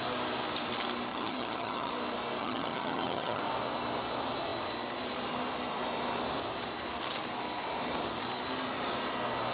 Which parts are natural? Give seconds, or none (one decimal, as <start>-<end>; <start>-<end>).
0.0-1.1; 1.9-2.4; 3.4-9.5